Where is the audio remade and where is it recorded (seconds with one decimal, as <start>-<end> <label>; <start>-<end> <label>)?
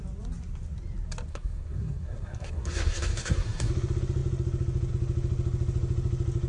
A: 0.0-1.3 recorded; 1.3-3.7 remade; 3.7-6.5 recorded